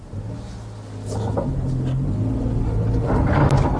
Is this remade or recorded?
recorded